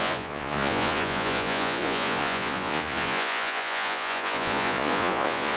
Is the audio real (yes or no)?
no